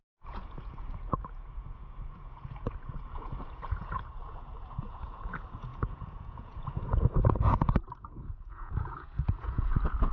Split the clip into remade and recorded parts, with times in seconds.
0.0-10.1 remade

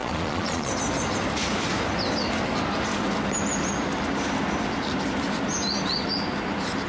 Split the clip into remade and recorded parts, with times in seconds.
0.0-0.7 remade; 0.7-6.9 recorded

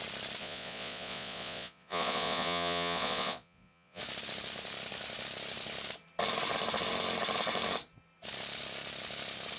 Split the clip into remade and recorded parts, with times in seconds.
0.0-0.4 recorded; 0.4-4.0 remade; 4.0-9.6 recorded